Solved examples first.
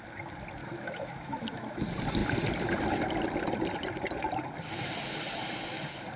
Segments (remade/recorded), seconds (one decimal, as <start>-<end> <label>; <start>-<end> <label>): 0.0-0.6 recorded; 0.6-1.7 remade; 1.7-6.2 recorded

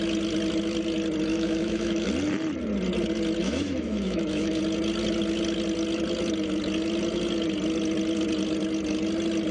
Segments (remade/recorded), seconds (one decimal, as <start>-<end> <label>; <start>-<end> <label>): 0.0-1.3 recorded; 1.3-2.1 remade; 2.1-3.4 recorded; 3.4-4.6 remade; 4.6-9.5 recorded

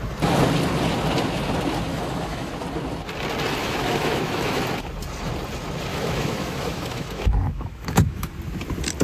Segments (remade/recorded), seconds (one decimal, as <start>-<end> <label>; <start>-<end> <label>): 0.0-1.9 recorded; 1.9-2.5 remade; 2.5-3.6 recorded; 3.6-4.6 remade; 4.6-5.9 recorded; 5.9-8.3 remade; 8.3-9.0 recorded

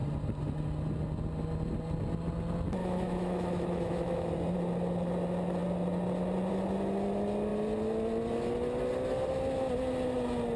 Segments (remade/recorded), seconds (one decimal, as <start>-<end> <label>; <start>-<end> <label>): 0.0-2.8 recorded; 2.8-4.3 remade; 4.3-10.6 recorded